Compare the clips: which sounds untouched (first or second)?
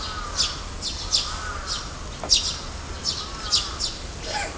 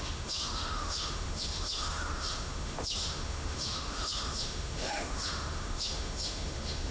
first